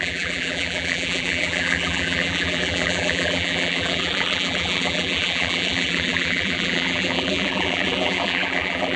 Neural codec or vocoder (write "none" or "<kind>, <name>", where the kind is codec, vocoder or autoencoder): vocoder, BigVGAN v2